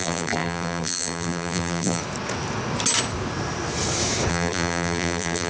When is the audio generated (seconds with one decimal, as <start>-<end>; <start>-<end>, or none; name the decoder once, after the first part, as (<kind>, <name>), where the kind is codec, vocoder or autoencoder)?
0.0-2.0 (vocoder, BigVGAN v2); 4.3-5.5